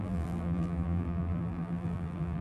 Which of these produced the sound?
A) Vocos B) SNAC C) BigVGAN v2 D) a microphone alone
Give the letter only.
C